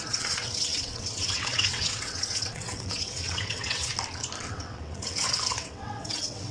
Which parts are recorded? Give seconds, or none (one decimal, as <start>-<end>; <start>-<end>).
3.9-4.5